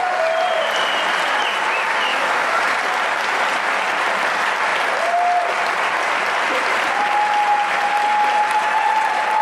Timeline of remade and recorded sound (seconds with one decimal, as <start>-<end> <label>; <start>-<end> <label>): 0.0-2.1 recorded; 2.1-2.6 remade; 2.6-9.4 recorded